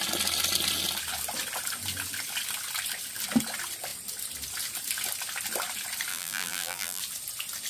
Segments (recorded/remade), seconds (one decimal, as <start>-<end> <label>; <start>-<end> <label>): 0.0-6.1 recorded; 6.1-7.0 remade; 7.0-7.7 recorded